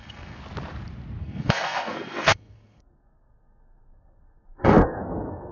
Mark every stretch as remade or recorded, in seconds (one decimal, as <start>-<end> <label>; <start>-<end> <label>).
0.0-0.4 remade; 0.4-1.2 recorded; 1.2-5.5 remade